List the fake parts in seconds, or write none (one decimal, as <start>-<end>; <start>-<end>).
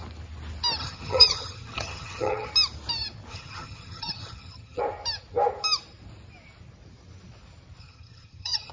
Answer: 0.8-2.5; 3.3-4.8; 7.8-8.7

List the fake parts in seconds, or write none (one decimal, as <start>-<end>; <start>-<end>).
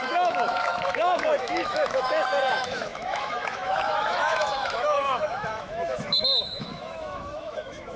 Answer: 0.0-8.0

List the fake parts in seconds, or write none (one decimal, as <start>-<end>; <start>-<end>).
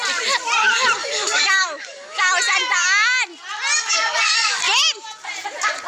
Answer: 1.0-2.3; 3.9-4.6